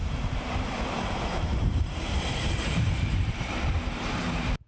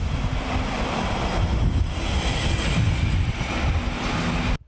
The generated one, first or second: first